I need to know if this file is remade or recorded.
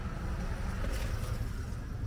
recorded